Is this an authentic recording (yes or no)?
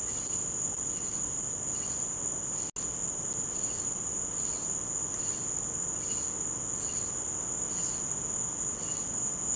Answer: yes